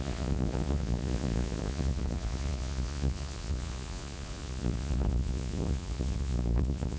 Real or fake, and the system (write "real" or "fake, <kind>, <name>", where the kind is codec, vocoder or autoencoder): fake, vocoder, Vocos